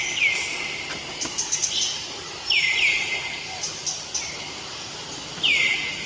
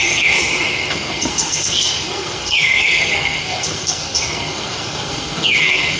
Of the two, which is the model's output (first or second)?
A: second